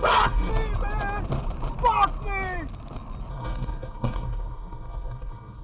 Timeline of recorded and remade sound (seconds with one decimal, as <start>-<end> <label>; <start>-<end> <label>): 0.0-0.5 remade; 0.5-3.3 recorded; 3.3-5.6 remade